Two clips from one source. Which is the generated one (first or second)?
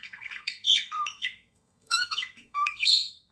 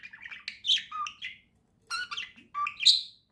first